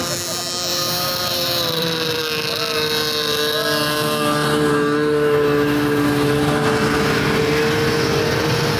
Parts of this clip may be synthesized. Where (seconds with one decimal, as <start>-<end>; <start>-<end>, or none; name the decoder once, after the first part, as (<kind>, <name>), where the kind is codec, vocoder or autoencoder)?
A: 0.7-2.2 (vocoder, BigVGAN v2)